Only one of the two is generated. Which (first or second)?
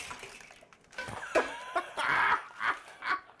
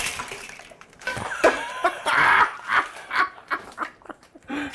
second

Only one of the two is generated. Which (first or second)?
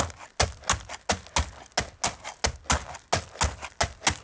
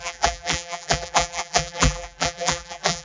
second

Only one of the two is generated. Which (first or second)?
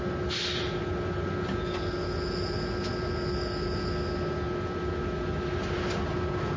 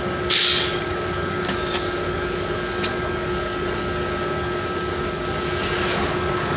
second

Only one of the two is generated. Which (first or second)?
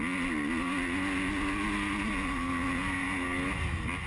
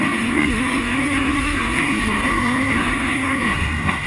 second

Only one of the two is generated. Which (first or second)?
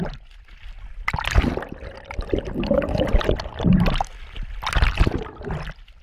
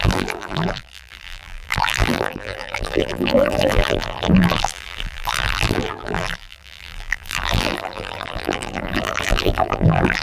second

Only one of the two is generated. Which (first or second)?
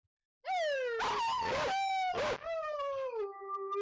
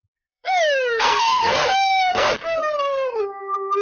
second